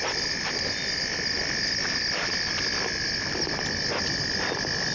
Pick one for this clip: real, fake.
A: real